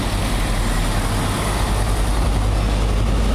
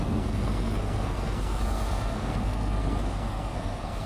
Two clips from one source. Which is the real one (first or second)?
first